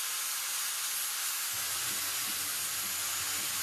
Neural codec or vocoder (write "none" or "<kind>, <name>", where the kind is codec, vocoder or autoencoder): none